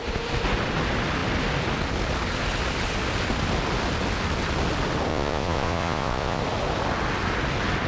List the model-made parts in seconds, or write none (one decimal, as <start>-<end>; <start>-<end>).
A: 5.1-6.4